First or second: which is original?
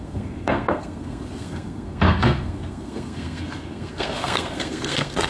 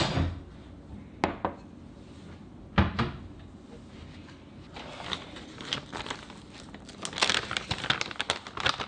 second